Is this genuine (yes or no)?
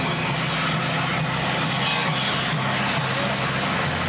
yes